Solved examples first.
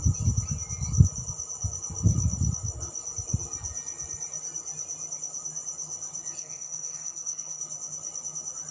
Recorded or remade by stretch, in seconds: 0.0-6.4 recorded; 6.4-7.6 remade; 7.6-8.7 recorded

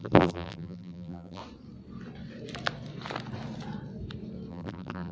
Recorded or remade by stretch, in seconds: 0.0-1.4 remade; 1.4-4.5 recorded; 4.5-5.1 remade

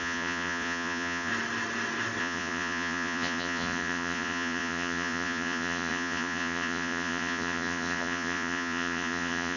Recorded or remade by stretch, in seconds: 0.0-1.3 remade; 1.3-2.2 recorded; 2.2-9.6 remade

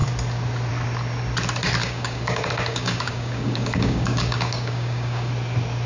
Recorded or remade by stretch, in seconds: 0.0-1.8 recorded; 1.8-5.3 remade; 5.3-5.9 recorded

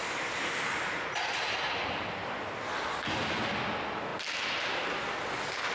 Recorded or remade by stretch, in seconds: 0.0-5.7 recorded

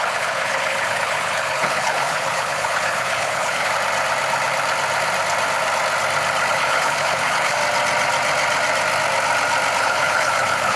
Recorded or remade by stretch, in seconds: 0.0-3.7 remade; 3.7-6.5 recorded; 6.5-7.6 remade; 7.6-9.8 recorded; 9.8-10.8 remade

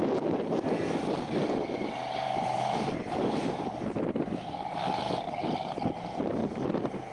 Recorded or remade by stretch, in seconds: 0.0-2.0 recorded; 2.0-4.0 remade; 4.0-7.1 recorded